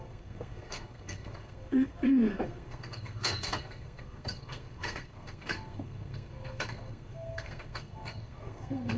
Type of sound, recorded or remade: remade